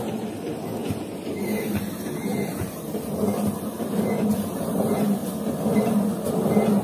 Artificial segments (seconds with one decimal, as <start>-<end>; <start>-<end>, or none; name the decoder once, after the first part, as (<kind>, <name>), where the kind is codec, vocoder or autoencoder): 0.0-5.2 (vocoder, BigVGAN v2); 6.3-6.8